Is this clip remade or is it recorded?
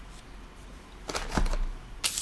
recorded